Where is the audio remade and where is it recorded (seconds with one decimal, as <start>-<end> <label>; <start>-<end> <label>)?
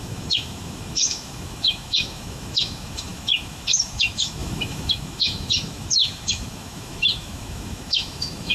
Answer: 0.0-8.5 remade